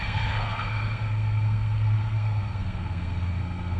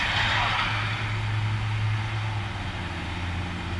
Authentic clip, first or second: second